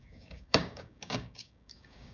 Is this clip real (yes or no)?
no